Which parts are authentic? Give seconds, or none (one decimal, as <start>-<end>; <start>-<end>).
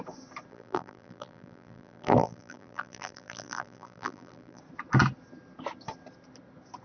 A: 0.0-0.5; 4.6-6.8